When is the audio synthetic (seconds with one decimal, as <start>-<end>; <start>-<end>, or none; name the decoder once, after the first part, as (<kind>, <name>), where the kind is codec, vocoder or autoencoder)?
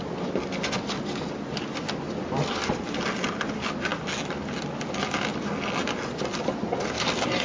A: none